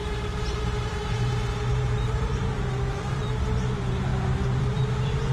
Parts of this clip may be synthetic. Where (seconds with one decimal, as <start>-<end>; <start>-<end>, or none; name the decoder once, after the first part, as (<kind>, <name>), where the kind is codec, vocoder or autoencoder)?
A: 0.0-2.4 (vocoder, BigVGAN v2); 2.9-4.1; 4.6-5.3